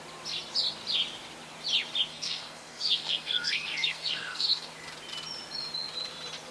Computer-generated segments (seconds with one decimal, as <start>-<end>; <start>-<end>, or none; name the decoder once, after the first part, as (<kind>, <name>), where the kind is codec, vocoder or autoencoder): 2.1-4.7 (codec, SNAC)